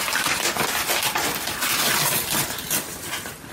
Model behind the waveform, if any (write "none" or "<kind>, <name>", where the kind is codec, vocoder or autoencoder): none